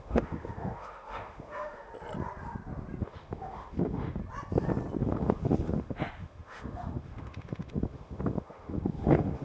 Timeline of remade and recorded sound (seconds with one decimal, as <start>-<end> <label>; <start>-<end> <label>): 0.0-1.9 remade; 1.9-3.0 recorded; 3.0-4.2 remade; 4.2-5.0 recorded; 5.0-9.4 remade